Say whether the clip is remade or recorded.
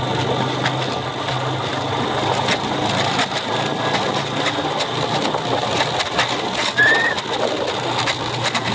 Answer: recorded